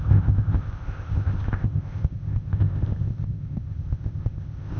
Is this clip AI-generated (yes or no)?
yes